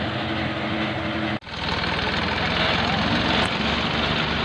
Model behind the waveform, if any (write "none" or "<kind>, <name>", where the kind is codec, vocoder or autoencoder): none